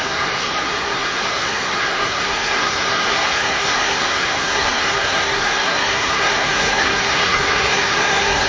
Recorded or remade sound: remade